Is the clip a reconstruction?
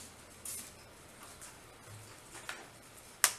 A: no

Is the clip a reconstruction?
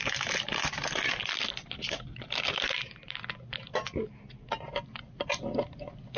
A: no